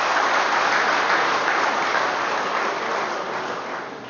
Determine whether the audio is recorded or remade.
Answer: recorded